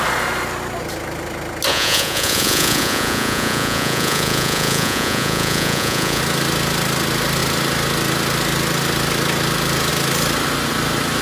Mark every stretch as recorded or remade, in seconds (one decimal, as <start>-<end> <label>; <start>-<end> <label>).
0.0-1.7 recorded; 1.7-6.2 remade; 6.2-11.2 recorded